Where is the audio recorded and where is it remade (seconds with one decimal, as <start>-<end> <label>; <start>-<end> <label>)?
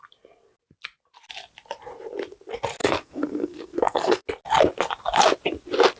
0.0-2.8 recorded; 2.8-4.3 remade; 4.3-6.0 recorded